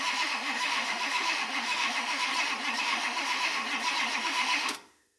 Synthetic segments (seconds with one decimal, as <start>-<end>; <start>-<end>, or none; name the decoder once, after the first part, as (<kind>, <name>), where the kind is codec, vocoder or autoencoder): 0.0-2.3 (autoencoder, DAC-VAE); 2.8-3.6; 4.2-5.2